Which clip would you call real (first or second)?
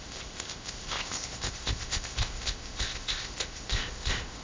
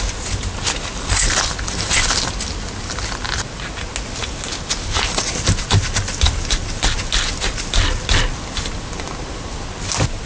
second